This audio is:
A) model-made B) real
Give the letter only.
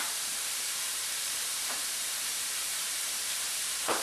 A